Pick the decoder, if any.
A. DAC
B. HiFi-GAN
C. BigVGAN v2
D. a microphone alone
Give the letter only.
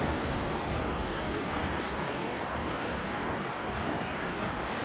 A